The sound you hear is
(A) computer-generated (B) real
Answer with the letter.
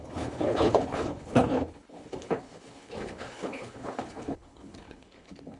A